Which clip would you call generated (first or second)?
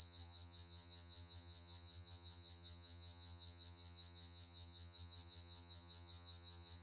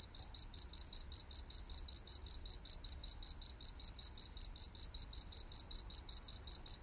first